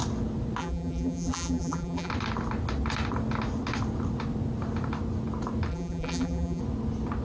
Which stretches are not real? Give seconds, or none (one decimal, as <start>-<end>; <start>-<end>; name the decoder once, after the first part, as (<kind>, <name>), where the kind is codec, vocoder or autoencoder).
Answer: 0.6-2.1 (vocoder, BigVGAN v2); 5.7-6.6